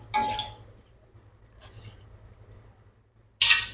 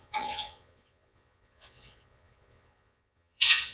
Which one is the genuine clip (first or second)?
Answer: first